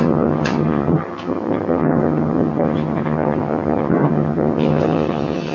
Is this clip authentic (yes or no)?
no